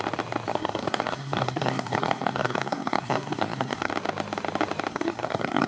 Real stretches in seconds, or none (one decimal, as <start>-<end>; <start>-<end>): 0.0-0.5; 3.9-4.9